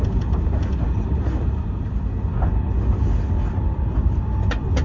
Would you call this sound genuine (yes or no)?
yes